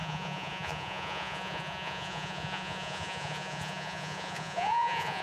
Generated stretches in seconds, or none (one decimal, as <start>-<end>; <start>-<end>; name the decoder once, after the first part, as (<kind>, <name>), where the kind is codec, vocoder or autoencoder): 0.0-5.2 (vocoder, Vocos)